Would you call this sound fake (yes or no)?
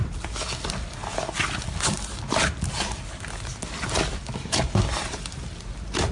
no